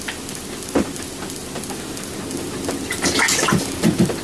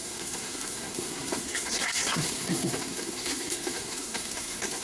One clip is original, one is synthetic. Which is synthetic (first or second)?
second